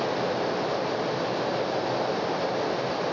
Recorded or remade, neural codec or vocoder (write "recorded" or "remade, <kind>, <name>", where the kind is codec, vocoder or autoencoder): recorded